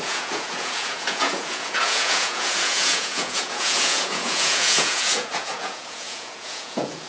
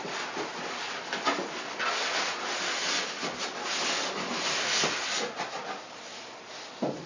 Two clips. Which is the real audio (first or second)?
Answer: second